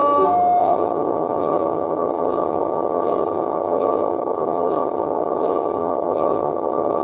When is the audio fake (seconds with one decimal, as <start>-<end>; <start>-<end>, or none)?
0.6-7.0